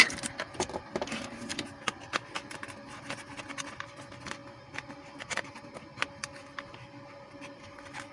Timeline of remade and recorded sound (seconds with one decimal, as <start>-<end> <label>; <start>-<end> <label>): 0.0-8.1 recorded